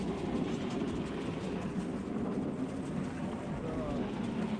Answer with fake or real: real